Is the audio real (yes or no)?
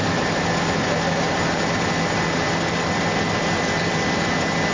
yes